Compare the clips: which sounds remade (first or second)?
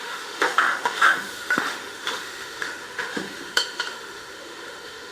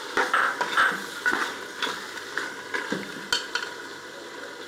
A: first